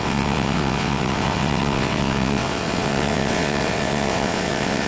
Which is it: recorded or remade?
remade